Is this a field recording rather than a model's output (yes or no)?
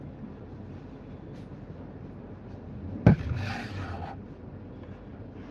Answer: yes